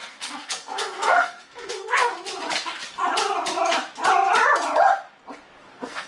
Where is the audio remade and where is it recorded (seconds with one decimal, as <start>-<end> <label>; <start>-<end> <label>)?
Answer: 0.0-2.1 remade; 2.1-5.6 recorded; 5.6-6.1 remade